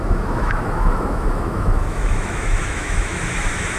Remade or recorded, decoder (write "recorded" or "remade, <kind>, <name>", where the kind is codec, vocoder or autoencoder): remade, autoencoder, DAC-VAE